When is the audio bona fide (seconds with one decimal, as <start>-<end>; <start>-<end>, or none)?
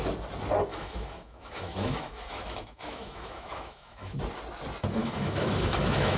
0.0-0.7; 4.2-5.0